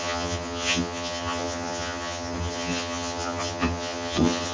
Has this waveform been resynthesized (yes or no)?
yes